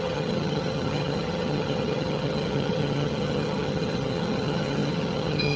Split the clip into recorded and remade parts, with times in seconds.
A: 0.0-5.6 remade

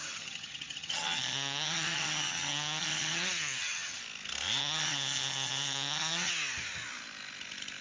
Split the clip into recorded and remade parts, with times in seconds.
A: 0.0-4.0 remade; 4.0-4.6 recorded; 4.6-6.3 remade; 6.3-7.8 recorded

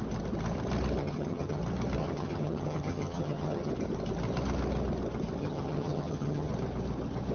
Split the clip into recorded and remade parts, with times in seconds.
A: 0.0-1.0 recorded; 1.0-1.6 remade; 1.6-2.0 recorded; 2.0-3.7 remade; 3.7-5.4 recorded; 5.4-6.5 remade; 6.5-7.3 recorded

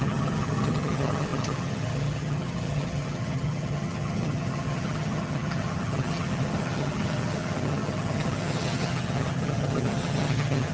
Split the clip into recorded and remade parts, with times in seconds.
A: 0.0-10.7 remade

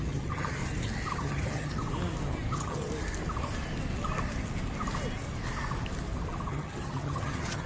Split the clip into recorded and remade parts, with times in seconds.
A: 0.0-0.6 remade; 0.6-1.1 recorded; 1.1-1.8 remade; 1.8-2.5 recorded; 2.5-2.9 remade; 2.9-6.5 recorded; 6.5-7.7 remade

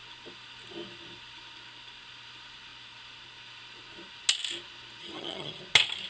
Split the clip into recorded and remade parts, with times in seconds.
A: 0.0-5.0 recorded; 5.0-5.6 remade; 5.6-6.1 recorded

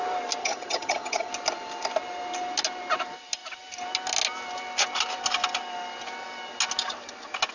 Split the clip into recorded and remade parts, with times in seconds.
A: 0.0-0.4 recorded; 0.4-1.3 remade; 1.3-7.5 recorded